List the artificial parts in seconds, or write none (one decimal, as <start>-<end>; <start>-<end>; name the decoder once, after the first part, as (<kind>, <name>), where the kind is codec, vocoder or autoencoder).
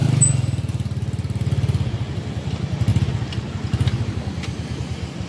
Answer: none